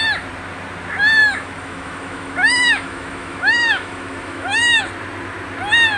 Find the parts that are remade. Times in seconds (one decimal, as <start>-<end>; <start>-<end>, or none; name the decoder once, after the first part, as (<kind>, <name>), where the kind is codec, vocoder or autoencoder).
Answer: 1.2-4.8 (autoencoder, DAC-VAE)

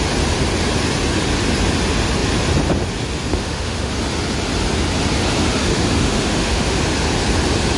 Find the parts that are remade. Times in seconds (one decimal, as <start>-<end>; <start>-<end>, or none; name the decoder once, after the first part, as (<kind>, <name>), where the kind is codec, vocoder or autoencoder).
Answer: 3.3-3.9 (autoencoder, DAC-VAE); 5.6-6.8

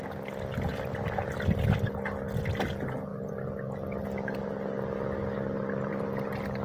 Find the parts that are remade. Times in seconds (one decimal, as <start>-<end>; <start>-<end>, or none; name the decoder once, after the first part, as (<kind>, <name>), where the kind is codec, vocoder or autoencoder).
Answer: none

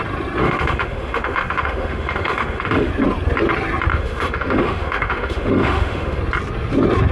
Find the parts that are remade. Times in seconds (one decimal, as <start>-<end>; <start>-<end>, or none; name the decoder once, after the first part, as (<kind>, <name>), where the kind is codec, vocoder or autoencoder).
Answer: 0.4-2.9 (autoencoder, DAC-VAE); 3.9-6.2

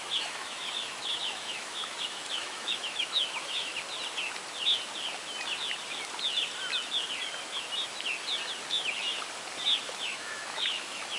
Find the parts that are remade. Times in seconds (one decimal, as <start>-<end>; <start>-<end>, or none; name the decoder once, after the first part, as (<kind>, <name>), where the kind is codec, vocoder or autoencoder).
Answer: 0.0-3.7 (autoencoder, DAC-VAE); 8.7-9.1; 9.9-11.2